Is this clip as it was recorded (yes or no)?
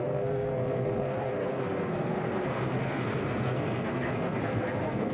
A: no